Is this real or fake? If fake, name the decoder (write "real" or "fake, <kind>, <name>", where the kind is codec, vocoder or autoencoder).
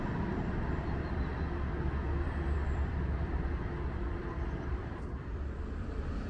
fake, vocoder, BigVGAN v2